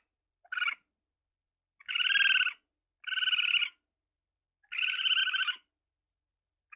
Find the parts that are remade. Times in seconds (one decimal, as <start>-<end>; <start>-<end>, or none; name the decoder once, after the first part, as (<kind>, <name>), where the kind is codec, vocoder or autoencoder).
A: none